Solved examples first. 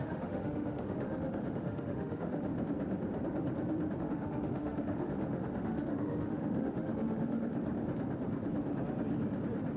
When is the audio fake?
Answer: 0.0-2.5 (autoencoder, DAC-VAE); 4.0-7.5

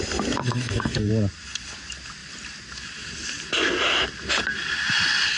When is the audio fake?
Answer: 0.4-1.1 (codec, SNAC)